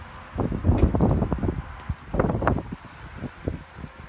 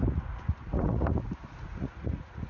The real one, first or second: first